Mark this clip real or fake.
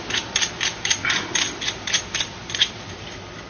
real